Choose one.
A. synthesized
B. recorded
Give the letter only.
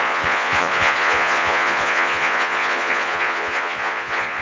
A